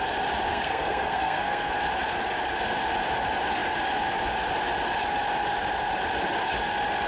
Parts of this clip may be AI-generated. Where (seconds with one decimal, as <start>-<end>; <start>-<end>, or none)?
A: 0.5-1.7